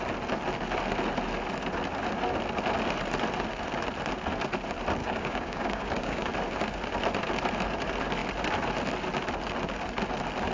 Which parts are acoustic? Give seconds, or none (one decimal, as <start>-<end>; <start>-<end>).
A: 0.0-5.0; 6.3-10.5